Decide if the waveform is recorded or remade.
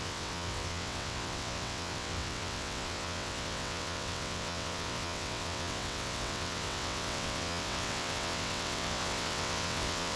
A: remade